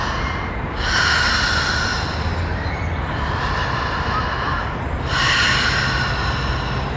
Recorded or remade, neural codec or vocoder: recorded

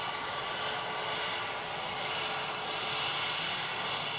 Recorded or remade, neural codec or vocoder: recorded